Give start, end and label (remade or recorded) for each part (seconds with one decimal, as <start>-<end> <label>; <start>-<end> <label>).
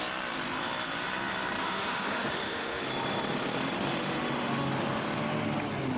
0.0-1.6 recorded; 1.6-2.9 remade; 2.9-3.9 recorded; 3.9-4.7 remade; 4.7-6.0 recorded